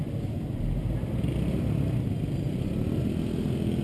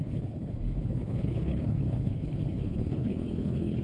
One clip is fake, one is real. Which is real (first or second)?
first